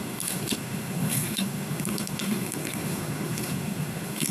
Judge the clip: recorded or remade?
remade